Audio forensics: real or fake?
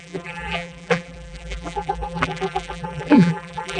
fake